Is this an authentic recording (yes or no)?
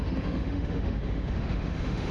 no